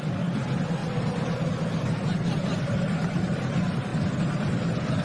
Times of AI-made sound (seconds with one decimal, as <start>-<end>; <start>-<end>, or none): none